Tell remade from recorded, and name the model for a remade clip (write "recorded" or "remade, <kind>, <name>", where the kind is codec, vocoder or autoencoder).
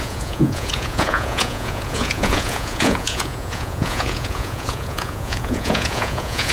remade, vocoder, Vocos